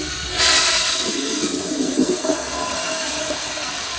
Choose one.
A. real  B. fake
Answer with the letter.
B